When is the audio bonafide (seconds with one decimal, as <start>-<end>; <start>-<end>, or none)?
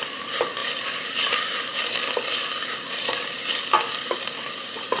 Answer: 0.0-5.0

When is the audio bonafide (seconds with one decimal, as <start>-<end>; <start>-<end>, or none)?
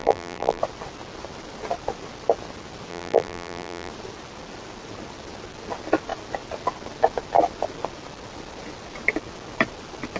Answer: 0.6-2.9; 3.9-10.2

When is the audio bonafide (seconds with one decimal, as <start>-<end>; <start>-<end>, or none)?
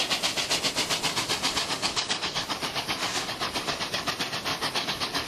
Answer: 0.0-1.7; 4.1-4.5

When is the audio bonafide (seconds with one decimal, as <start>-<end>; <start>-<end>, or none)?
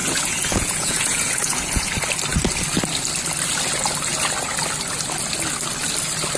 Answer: 1.9-6.4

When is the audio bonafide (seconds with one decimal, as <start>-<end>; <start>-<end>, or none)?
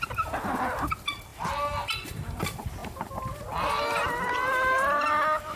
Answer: 0.0-5.6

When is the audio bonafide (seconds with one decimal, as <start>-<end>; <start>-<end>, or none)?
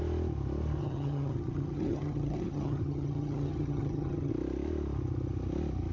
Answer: 0.0-0.8; 4.3-5.9